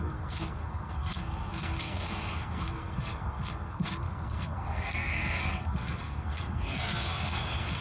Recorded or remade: remade